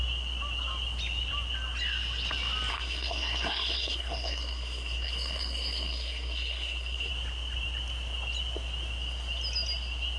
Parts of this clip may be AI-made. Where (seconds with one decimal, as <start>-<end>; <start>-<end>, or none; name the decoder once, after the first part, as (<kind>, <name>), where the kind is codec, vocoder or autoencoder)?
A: 2.7-7.1 (codec, SNAC)

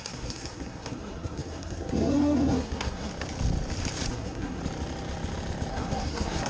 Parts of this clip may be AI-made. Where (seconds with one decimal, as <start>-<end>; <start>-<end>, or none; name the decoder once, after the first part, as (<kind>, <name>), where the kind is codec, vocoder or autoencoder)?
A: 0.0-3.1 (codec, SNAC); 4.1-4.6; 5.7-6.5

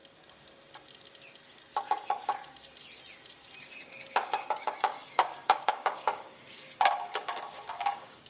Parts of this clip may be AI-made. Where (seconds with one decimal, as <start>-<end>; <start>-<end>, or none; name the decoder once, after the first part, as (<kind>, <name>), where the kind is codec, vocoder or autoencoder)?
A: 1.8-2.2 (codec, DAC); 3.6-8.3

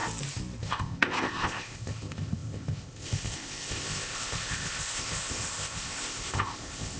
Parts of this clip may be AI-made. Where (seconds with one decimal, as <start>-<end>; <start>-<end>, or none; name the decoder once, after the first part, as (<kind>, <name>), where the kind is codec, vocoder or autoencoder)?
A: 0.6-7.0 (codec, ZipCodec)

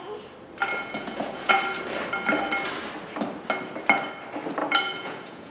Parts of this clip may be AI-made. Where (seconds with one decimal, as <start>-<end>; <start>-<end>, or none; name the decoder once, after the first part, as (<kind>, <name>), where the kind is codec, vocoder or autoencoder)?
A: 0.8-1.6 (vocoder, Vocos); 4.6-5.5

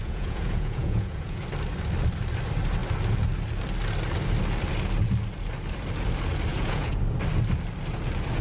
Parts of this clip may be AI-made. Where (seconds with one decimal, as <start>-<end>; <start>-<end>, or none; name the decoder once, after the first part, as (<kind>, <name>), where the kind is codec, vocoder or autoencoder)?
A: 0.0-1.4 (vocoder, Vocos); 6.5-7.0

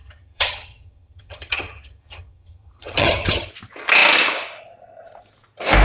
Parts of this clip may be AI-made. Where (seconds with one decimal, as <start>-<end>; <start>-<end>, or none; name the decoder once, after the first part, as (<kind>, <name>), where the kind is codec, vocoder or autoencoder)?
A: 0.0-3.5 (vocoder, HiFi-GAN)

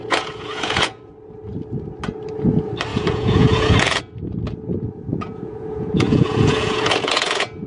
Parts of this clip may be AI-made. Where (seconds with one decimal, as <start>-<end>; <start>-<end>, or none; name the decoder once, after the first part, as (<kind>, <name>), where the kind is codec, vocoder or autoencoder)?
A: 0.0-1.1 (vocoder, Vocos); 2.9-4.0; 5.1-7.7